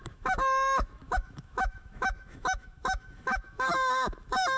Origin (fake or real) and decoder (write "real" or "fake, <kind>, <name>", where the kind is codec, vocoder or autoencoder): fake, autoencoder, DAC-VAE